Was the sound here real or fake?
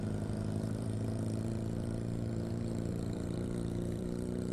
fake